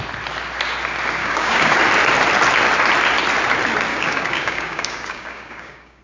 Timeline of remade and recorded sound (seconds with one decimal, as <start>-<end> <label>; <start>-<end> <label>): 0.0-1.2 recorded; 1.2-1.8 remade; 1.8-3.9 recorded; 3.9-6.0 remade